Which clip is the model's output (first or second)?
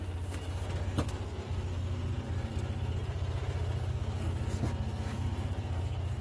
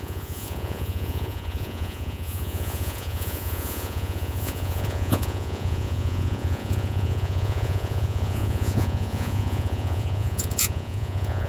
second